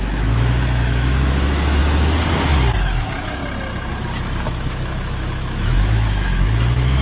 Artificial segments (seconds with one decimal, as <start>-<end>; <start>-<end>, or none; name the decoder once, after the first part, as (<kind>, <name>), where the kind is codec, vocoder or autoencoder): 0.0-1.8 (autoencoder, DAC-VAE); 2.8-3.4; 3.9-7.0